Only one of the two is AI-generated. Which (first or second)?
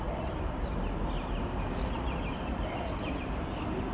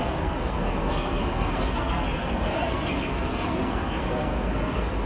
second